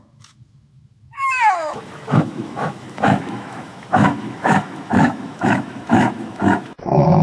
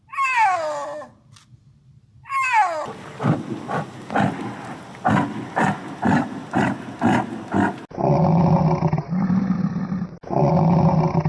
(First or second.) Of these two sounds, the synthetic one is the first